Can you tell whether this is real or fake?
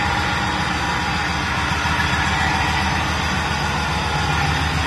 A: real